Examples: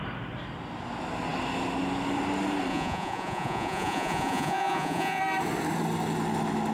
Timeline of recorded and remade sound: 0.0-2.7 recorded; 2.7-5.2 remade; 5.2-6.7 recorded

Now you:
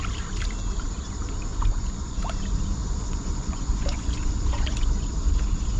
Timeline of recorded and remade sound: 0.0-1.5 recorded; 1.5-2.2 remade; 2.2-2.7 recorded; 2.7-4.9 remade; 4.9-5.8 recorded

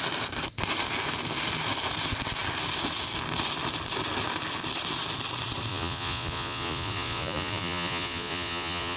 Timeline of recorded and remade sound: 0.0-5.7 recorded; 5.7-9.0 remade